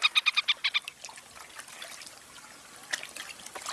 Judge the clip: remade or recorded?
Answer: recorded